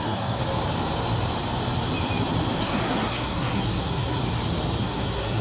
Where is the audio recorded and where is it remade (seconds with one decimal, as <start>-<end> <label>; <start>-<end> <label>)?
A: 0.0-0.4 remade; 0.4-2.6 recorded; 2.6-4.2 remade; 4.2-4.8 recorded; 4.8-5.4 remade